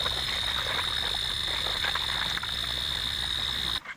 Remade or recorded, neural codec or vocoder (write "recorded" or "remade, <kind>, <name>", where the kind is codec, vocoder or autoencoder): recorded